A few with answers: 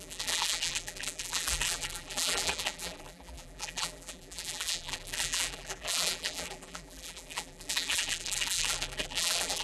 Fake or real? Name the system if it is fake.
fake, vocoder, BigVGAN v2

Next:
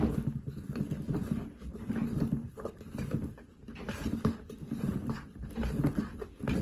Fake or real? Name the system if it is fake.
fake, vocoder, BigVGAN v2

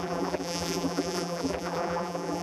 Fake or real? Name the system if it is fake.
fake, vocoder, BigVGAN v2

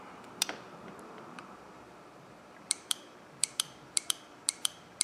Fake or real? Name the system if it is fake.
fake, vocoder, BigVGAN v2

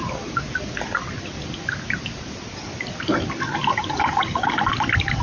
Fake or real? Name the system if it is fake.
real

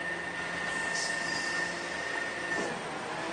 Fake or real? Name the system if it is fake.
real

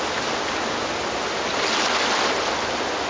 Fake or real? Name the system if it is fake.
real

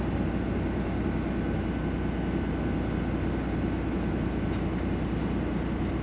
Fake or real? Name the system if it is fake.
real